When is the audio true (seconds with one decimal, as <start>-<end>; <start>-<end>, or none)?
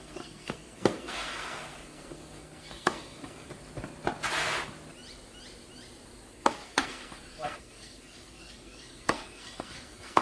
3.5-6.3